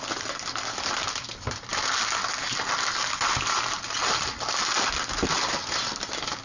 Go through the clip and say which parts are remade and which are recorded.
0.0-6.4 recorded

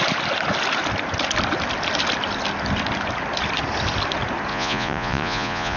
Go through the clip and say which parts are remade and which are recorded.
0.0-4.5 recorded; 4.5-5.8 remade

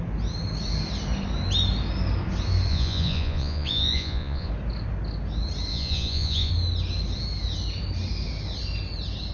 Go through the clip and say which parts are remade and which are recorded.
0.0-2.7 recorded; 2.7-4.5 remade; 4.5-5.7 recorded; 5.7-6.5 remade; 6.5-9.3 recorded

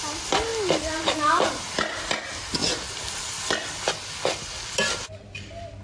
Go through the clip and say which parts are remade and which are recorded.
0.0-5.8 recorded